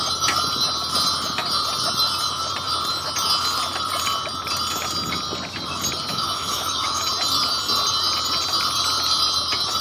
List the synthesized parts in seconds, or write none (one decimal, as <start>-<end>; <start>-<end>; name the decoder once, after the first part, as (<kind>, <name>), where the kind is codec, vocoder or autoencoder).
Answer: 6.1-7.1 (autoencoder, DAC-VAE)